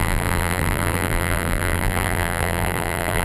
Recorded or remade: remade